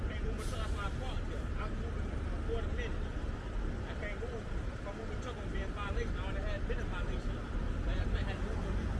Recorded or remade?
recorded